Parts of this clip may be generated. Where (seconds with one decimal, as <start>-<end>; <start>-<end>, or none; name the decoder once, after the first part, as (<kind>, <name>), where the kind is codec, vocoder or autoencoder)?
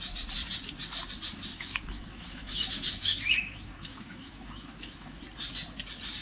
1.5-5.2 (autoencoder, DAC-VAE)